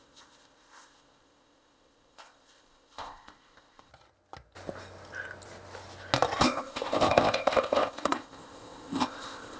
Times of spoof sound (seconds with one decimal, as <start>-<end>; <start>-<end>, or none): 0.0-3.9; 6.4-9.6